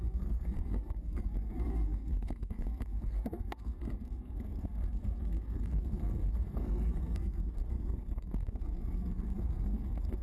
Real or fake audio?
fake